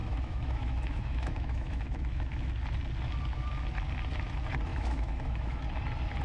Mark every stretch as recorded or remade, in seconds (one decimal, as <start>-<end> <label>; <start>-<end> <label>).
0.0-2.5 remade; 2.5-4.7 recorded; 4.7-5.6 remade; 5.6-6.2 recorded